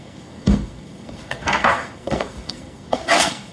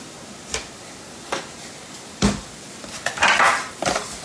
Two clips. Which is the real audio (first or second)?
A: second